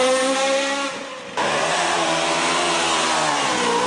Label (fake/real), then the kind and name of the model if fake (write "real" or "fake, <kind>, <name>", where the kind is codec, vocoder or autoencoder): real